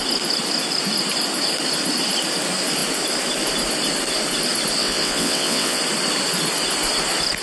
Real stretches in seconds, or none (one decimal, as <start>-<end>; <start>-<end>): 0.0-4.8; 5.8-7.4